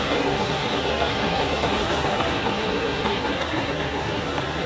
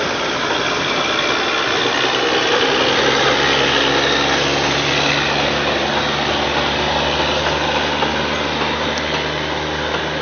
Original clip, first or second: second